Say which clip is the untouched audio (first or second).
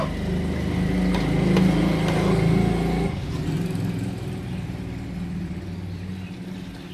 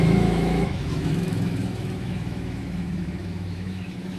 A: first